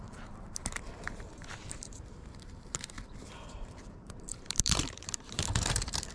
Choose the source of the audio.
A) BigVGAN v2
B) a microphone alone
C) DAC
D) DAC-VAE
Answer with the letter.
A